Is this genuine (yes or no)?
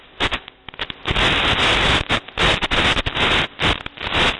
yes